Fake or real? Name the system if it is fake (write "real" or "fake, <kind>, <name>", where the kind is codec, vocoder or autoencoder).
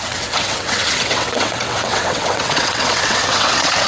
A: fake, vocoder, WaveNeXt